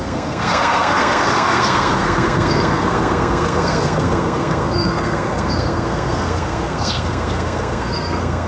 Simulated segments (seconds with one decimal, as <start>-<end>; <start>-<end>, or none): 0.0-8.5